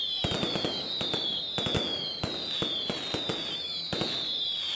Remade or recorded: recorded